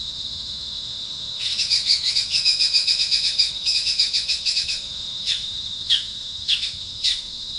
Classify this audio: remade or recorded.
remade